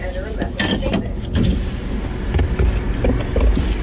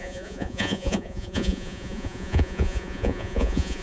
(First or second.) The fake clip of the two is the second